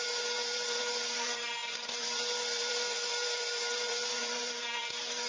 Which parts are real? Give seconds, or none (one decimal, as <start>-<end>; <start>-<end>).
none